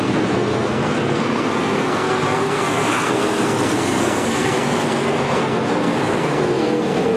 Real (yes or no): no